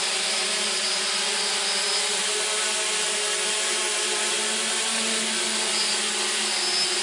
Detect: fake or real real